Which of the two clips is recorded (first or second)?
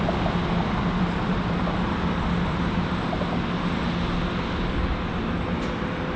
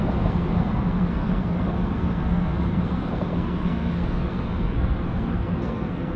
first